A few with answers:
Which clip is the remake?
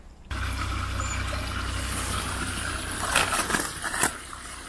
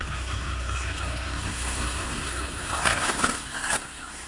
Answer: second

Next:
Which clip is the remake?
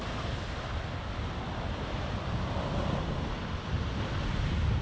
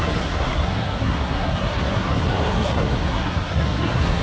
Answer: second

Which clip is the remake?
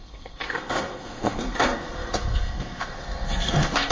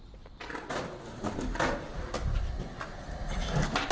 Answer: first